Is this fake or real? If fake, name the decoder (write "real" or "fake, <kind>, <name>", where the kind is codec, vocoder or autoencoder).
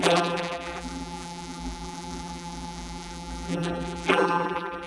fake, vocoder, BigVGAN v2